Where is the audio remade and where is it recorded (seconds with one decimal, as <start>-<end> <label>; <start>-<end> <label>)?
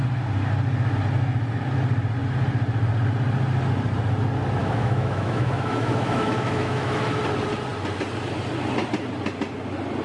0.0-4.6 recorded; 4.6-7.2 remade; 7.2-10.0 recorded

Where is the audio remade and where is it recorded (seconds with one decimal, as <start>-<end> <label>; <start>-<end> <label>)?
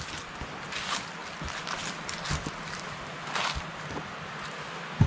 0.0-5.1 recorded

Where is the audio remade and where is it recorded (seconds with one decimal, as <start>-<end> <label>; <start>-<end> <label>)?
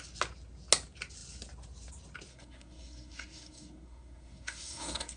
0.0-2.3 recorded; 2.3-5.2 remade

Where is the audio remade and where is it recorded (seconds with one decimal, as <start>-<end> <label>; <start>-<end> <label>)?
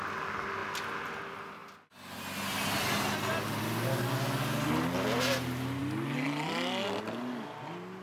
0.0-8.0 recorded